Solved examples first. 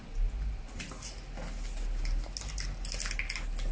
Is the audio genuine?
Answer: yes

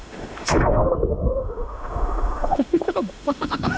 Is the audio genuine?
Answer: no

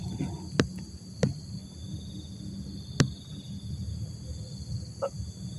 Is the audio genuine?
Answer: yes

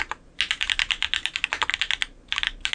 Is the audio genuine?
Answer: yes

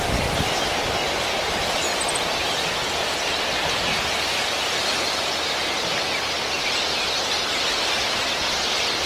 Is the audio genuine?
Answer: yes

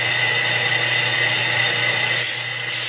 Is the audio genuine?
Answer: yes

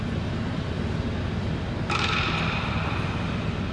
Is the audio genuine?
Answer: yes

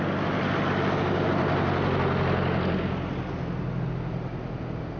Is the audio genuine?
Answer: yes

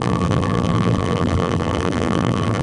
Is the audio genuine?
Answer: no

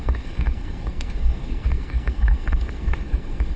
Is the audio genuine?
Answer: no